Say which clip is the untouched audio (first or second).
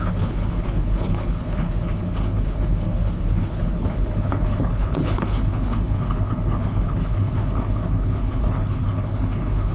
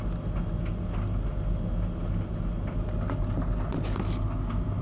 second